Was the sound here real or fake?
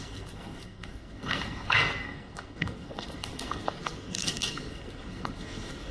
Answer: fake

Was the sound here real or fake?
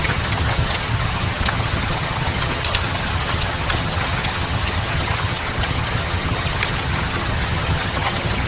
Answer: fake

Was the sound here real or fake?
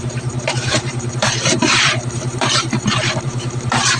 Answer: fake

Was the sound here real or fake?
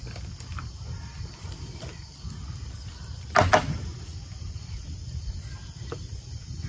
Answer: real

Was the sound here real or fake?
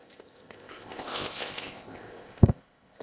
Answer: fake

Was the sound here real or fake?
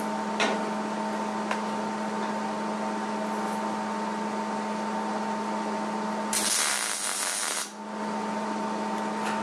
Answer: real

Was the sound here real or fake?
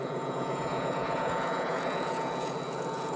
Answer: fake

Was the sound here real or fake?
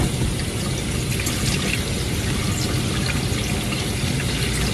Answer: real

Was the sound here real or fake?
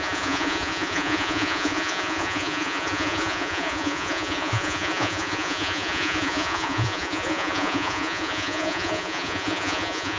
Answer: fake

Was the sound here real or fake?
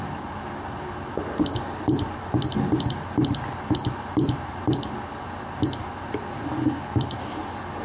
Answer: real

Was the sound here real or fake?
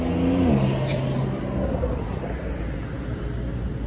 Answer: real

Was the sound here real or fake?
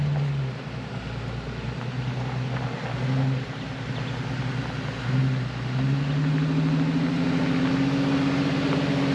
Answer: real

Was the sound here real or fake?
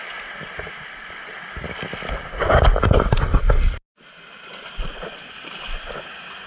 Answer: real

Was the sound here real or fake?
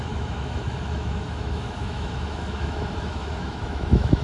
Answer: fake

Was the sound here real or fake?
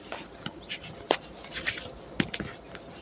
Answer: real